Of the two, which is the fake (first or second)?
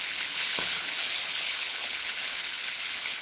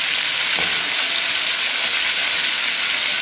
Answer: first